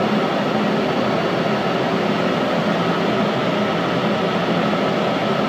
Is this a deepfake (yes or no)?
no